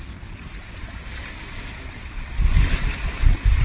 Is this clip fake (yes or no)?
no